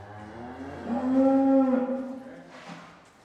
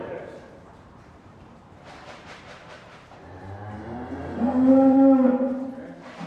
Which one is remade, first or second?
second